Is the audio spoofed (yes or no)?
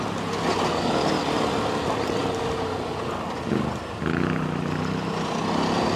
no